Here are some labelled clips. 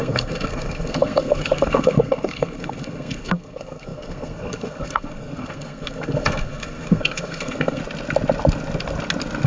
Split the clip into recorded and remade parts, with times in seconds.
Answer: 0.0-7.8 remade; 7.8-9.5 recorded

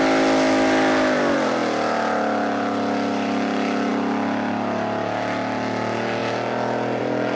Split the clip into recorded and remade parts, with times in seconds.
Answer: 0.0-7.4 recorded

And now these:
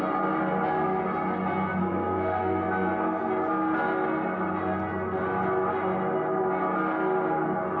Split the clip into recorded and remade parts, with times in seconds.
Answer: 0.0-1.8 recorded; 1.8-3.2 remade; 3.2-7.8 recorded

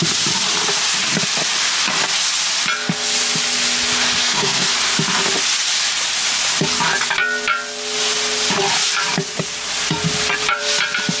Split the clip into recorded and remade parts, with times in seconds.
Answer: 0.0-4.2 recorded; 4.2-4.7 remade; 4.7-11.2 recorded

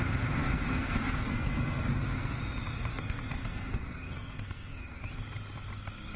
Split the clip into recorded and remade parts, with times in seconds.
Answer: 0.0-0.4 recorded; 0.4-2.4 remade; 2.4-2.9 recorded; 2.9-5.0 remade; 5.0-6.2 recorded